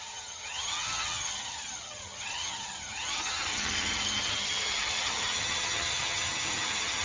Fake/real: fake